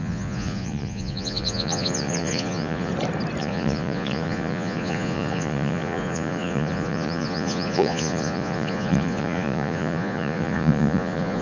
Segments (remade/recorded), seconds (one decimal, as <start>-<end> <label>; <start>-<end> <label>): 0.0-2.9 remade; 2.9-3.4 recorded; 3.4-11.4 remade